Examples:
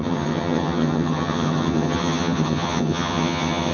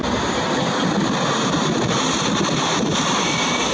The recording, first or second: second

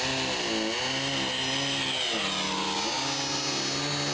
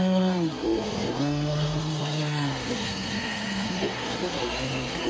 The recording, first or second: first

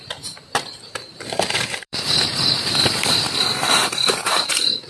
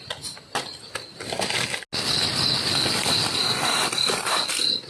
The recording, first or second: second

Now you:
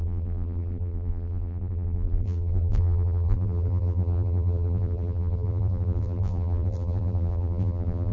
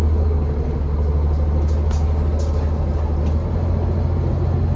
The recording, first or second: second